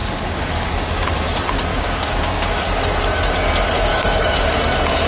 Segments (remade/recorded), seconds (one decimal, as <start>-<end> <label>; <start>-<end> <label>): 0.0-0.7 remade; 0.7-1.7 recorded; 1.7-2.7 remade; 2.7-3.9 recorded; 3.9-4.4 remade; 4.4-5.1 recorded